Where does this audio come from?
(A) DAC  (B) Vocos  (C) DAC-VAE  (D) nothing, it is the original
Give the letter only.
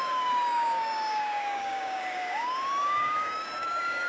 A